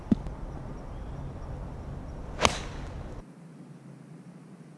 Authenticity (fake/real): real